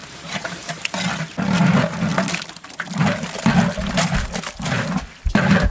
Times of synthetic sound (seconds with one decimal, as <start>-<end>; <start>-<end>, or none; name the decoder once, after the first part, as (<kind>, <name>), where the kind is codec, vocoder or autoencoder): 0.0-0.7 (vocoder, BigVGAN v2)